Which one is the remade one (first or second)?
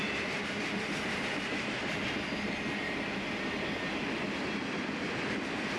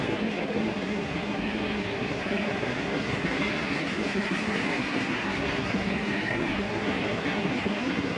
second